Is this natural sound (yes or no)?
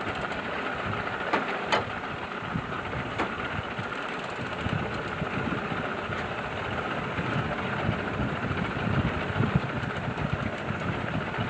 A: yes